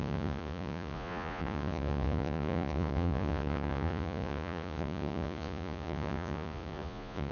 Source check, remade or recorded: remade